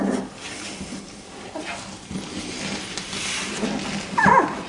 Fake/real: real